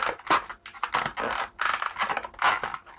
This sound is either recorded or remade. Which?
recorded